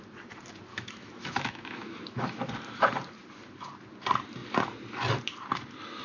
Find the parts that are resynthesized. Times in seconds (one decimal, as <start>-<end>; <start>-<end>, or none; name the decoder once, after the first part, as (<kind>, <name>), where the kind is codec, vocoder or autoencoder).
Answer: 0.7-2.5 (autoencoder, DAC-VAE)